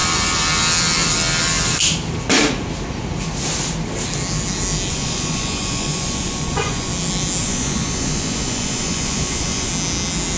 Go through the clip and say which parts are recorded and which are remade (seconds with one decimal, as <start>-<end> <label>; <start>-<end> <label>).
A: 0.0-4.9 recorded; 4.9-6.9 remade; 6.9-7.4 recorded; 7.4-9.7 remade; 9.7-10.4 recorded